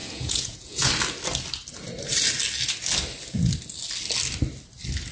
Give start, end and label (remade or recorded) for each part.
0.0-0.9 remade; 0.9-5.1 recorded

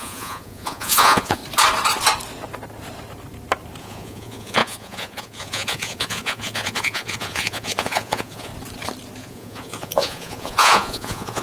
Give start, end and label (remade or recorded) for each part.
0.0-1.4 remade; 1.4-3.8 recorded; 3.8-8.5 remade; 8.5-9.2 recorded; 9.2-11.4 remade

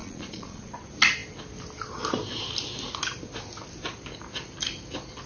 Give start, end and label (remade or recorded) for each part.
0.0-0.7 remade; 0.7-5.3 recorded

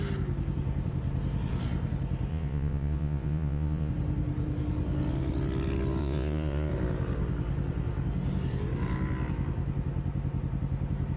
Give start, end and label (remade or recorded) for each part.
0.0-2.3 recorded; 2.3-3.9 remade; 3.9-6.0 recorded; 6.0-6.7 remade; 6.7-11.2 recorded

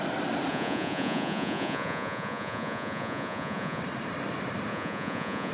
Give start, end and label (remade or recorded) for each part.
0.0-0.5 recorded; 0.5-3.8 remade; 3.8-4.7 recorded; 4.7-5.5 remade

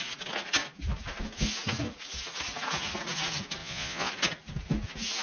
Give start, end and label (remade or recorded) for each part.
0.0-3.6 recorded; 3.6-4.1 remade; 4.1-5.2 recorded